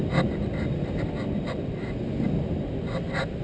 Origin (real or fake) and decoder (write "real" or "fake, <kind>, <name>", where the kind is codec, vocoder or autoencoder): real